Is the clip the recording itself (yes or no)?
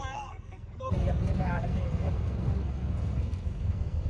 no